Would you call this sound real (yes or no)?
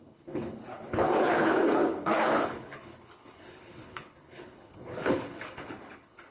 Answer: no